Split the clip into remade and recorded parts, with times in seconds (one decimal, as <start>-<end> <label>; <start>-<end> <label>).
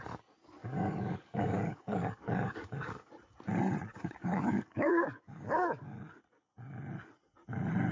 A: 0.0-0.6 recorded; 0.6-3.1 remade; 3.1-3.9 recorded; 3.9-6.0 remade; 6.0-7.9 recorded